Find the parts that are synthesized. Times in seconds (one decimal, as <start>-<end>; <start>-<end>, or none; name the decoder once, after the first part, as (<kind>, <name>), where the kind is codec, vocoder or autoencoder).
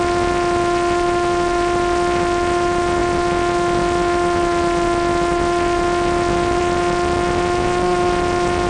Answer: none